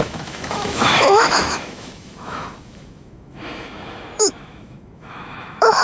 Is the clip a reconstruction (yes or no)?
yes